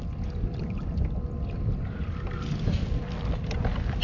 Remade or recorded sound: recorded